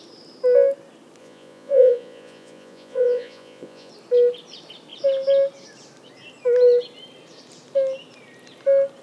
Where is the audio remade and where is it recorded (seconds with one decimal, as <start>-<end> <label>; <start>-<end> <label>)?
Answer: 0.0-1.2 recorded; 1.2-3.9 remade; 3.9-9.0 recorded